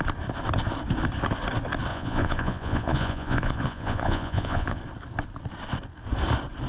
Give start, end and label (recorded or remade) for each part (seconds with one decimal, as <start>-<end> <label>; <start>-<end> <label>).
0.0-1.9 recorded; 1.9-4.8 remade; 4.8-6.7 recorded